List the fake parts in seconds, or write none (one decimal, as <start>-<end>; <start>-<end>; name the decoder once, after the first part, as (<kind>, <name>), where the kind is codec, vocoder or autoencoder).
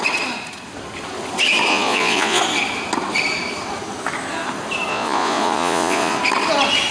1.7-2.4 (vocoder, Vocos); 4.9-6.2